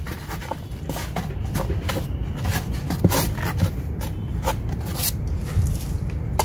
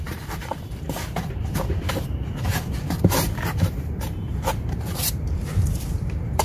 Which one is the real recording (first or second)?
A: first